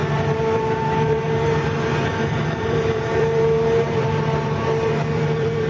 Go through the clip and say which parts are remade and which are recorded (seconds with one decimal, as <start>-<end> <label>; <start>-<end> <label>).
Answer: 0.0-5.7 remade